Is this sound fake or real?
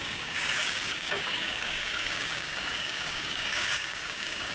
fake